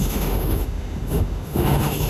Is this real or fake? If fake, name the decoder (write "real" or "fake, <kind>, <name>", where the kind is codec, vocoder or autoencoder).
fake, autoencoder, DAC-VAE